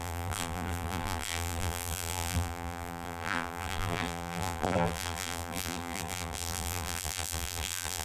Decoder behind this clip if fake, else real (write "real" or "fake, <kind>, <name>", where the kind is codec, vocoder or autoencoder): fake, vocoder, BigVGAN v2